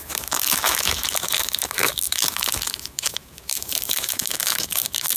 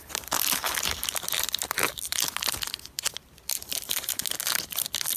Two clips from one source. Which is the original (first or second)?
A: second